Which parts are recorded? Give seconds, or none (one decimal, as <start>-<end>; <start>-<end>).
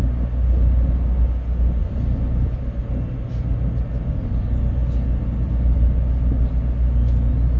0.0-1.8; 2.7-7.6